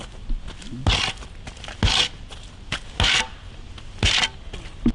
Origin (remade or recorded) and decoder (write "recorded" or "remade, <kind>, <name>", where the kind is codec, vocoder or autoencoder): recorded